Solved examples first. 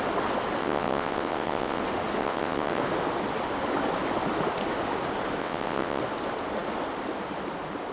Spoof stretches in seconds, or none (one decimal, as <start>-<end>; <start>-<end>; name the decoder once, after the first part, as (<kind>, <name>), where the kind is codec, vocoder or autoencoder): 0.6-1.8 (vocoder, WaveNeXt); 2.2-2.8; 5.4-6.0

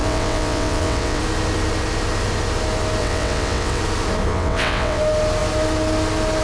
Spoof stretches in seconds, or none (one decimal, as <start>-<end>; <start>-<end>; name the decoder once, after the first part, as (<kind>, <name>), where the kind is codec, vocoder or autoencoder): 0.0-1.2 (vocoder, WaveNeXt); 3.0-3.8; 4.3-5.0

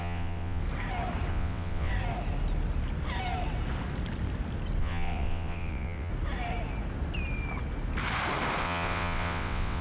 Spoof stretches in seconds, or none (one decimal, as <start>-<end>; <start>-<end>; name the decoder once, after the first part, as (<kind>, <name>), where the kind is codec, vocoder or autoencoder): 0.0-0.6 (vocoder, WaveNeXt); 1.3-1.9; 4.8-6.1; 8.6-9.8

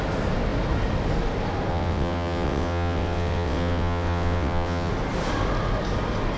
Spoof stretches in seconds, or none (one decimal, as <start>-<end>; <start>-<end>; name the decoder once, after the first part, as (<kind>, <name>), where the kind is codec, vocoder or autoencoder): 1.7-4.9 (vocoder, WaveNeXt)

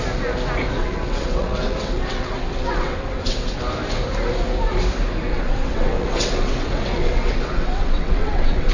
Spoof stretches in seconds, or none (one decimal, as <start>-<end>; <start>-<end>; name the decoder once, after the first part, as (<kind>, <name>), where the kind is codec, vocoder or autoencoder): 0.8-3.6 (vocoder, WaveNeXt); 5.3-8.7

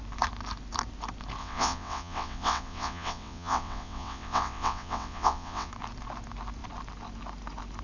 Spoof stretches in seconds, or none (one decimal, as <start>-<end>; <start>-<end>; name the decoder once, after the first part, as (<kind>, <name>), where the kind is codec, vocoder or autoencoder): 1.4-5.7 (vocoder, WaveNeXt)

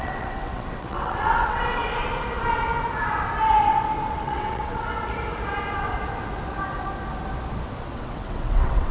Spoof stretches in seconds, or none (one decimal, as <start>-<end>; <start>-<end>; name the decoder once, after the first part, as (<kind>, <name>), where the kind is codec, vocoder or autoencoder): 0.0-1.8 (vocoder, WaveNeXt); 4.1-4.9; 7.9-8.9

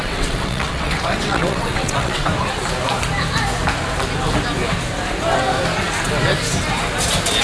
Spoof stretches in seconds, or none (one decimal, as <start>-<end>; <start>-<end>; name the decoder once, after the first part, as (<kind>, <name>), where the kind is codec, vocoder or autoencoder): 0.0-2.3 (vocoder, WaveNeXt)